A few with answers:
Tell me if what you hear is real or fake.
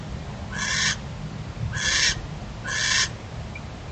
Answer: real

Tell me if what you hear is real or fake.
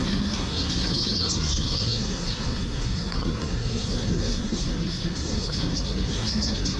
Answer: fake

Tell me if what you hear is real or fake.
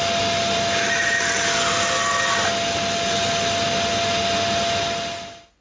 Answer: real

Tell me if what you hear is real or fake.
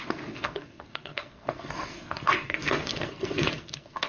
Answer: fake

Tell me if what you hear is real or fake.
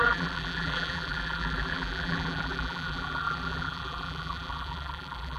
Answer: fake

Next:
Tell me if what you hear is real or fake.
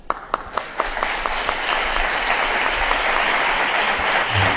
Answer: real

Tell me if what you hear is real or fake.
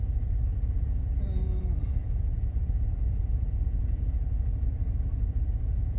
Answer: fake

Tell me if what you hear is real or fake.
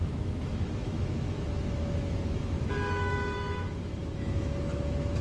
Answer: fake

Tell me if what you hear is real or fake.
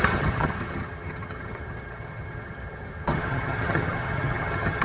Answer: fake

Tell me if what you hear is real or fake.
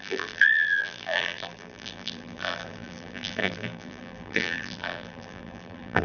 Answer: fake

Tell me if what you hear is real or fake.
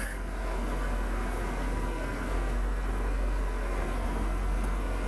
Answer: fake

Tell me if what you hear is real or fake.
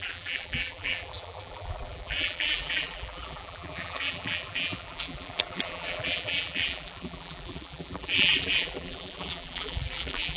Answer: fake